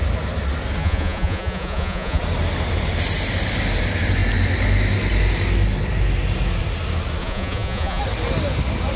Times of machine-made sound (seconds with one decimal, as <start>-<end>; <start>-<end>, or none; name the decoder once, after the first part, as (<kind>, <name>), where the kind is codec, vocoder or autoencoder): 0.8-2.2 (vocoder, Vocos); 7.2-8.0